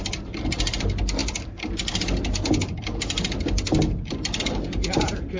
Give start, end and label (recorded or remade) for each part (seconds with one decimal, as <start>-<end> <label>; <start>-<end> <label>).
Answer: 0.0-5.4 recorded